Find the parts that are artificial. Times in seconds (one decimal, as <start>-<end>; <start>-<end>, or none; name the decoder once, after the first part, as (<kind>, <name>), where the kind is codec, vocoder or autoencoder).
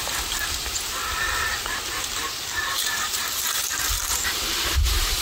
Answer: 0.0-1.0 (vocoder, BigVGAN v2); 2.8-5.2